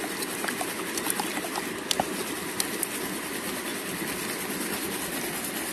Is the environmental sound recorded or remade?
recorded